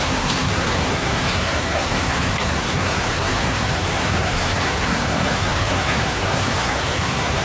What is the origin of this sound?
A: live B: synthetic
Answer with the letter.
B